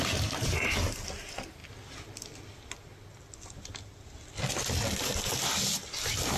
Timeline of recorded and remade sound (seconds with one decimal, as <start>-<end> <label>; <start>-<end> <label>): 0.0-6.4 recorded